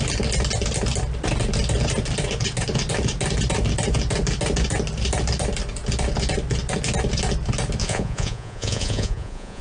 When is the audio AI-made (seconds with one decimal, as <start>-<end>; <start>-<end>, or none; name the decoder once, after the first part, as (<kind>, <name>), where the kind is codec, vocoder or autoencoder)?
7.8-9.6 (vocoder, Vocos)

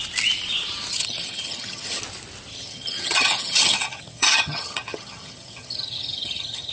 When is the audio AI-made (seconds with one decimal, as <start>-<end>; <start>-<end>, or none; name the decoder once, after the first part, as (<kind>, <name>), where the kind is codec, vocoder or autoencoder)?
0.9-2.0 (vocoder, HiFi-GAN); 2.5-6.7

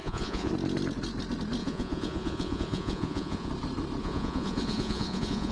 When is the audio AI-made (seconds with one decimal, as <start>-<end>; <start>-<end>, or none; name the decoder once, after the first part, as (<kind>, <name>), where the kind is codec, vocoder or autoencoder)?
0.0-0.5 (vocoder, Vocos); 1.6-3.5; 4.0-5.5

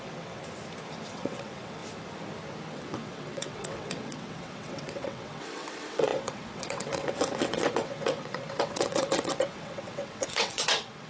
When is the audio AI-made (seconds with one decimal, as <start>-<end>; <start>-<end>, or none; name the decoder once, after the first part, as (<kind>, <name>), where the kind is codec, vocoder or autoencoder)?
0.0-0.4 (vocoder, WaveNeXt); 1.1-1.8; 2.7-11.1

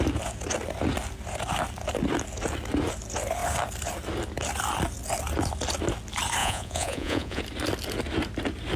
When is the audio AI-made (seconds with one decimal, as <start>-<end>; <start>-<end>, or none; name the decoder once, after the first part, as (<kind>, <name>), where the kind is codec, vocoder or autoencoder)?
6.4-7.4 (vocoder, Vocos)